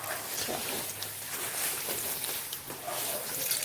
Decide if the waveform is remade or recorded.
remade